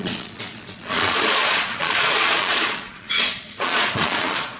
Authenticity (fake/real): fake